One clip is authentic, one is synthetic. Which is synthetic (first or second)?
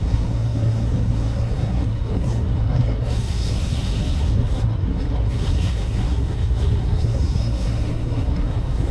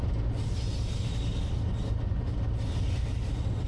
first